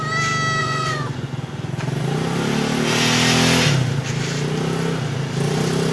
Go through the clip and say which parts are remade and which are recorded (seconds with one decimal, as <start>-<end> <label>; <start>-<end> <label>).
0.0-0.6 recorded; 0.6-1.7 remade; 1.7-5.9 recorded